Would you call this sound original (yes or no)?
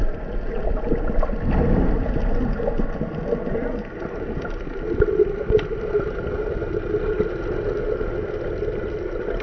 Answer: yes